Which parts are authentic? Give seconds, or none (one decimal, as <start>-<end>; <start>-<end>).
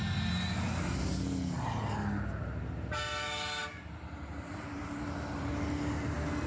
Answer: 0.0-3.6; 5.0-6.5